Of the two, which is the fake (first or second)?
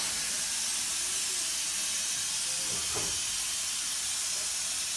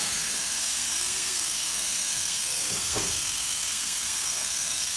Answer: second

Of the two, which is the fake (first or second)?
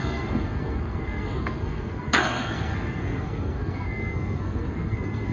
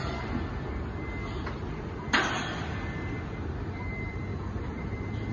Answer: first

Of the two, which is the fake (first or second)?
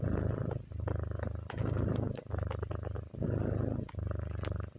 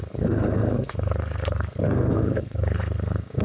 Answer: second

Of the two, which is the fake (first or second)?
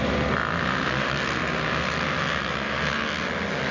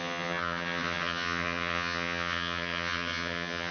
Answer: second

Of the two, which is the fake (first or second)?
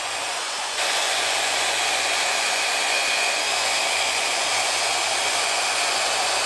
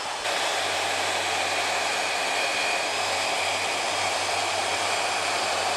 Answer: first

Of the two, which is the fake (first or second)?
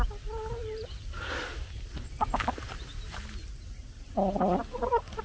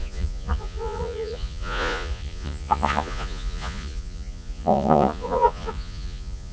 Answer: second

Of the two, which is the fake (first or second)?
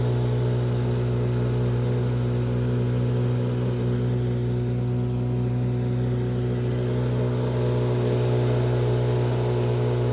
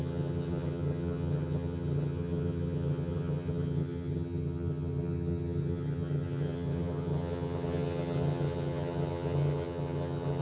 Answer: second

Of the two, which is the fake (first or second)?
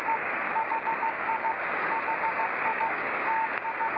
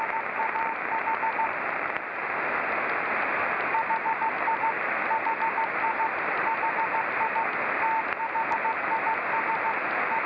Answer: first